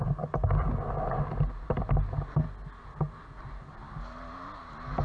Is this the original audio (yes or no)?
yes